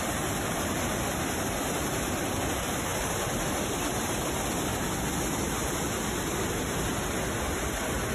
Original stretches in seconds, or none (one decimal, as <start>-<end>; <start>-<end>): 0.0-8.1